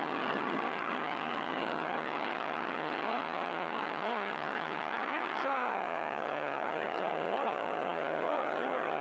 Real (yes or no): no